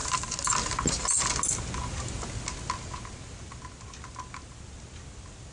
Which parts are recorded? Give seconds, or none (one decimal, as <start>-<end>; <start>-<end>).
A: 0.0-5.5